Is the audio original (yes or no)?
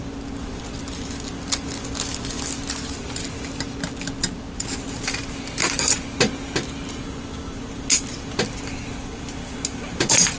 yes